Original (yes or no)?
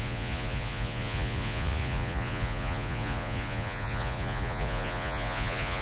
no